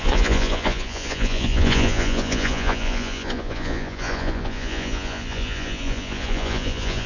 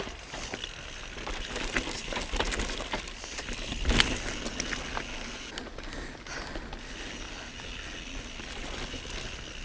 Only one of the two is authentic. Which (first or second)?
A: second